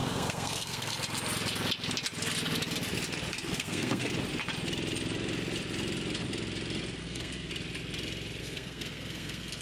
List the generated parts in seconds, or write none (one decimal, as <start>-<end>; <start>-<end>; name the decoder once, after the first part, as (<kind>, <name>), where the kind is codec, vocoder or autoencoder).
0.0-0.9 (codec, SNAC); 3.3-4.1; 7.0-7.5; 8.4-9.6